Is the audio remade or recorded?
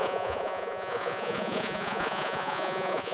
remade